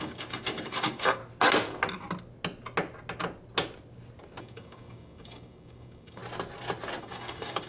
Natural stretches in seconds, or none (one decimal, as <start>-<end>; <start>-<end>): 1.2-4.4; 6.2-7.0